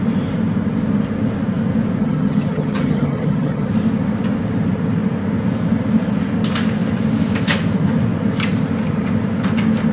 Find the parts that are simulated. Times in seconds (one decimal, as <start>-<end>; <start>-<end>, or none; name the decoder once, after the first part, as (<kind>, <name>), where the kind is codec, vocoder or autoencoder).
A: 2.0-3.7 (vocoder, HiFi-GAN)